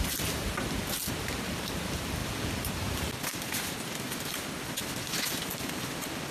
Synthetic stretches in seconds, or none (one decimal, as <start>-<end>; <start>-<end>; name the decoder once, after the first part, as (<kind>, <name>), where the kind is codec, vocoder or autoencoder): none